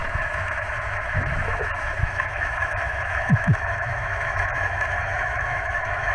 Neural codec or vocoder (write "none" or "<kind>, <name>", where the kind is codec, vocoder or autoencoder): autoencoder, DAC-VAE